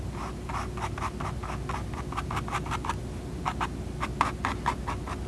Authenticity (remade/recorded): recorded